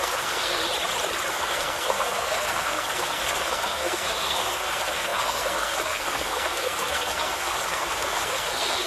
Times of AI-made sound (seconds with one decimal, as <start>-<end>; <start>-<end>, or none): 0.0-0.6; 1.3-8.9